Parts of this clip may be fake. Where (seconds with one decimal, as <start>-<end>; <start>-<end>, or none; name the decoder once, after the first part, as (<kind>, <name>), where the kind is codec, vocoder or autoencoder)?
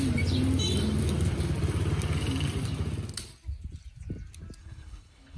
4.6-5.4 (codec, HILCodec)